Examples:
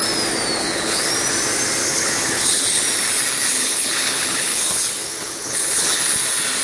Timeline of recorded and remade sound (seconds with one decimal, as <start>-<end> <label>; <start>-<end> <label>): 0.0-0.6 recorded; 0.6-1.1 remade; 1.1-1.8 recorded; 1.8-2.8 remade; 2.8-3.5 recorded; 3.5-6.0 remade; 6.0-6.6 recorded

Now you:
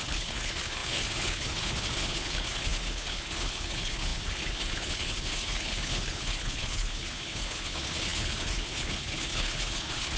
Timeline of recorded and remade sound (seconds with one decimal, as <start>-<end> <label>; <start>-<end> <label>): 0.0-10.2 remade

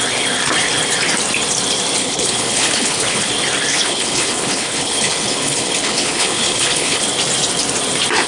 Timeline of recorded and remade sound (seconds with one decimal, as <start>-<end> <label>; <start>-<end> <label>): 0.0-2.0 recorded; 2.0-3.3 remade; 3.3-3.7 recorded; 3.7-7.0 remade; 7.0-8.3 recorded